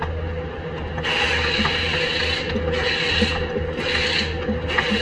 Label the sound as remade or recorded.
recorded